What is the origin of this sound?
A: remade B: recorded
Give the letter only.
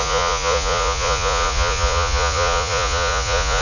A